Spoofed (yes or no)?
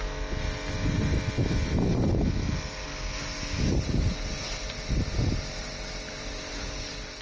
no